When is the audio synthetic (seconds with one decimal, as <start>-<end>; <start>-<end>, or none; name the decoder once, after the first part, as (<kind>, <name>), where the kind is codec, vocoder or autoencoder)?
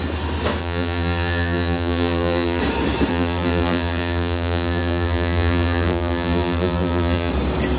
0.6-2.6 (vocoder, BigVGAN v2); 3.1-7.3